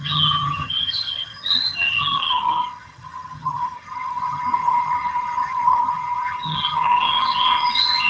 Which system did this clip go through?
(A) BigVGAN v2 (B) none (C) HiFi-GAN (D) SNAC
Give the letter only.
C